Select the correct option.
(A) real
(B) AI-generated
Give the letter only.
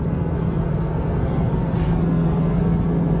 B